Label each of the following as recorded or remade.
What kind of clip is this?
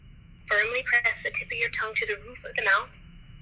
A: remade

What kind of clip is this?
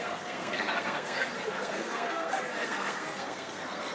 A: remade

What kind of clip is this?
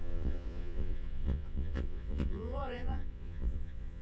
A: remade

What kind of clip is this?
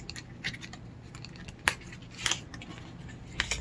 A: recorded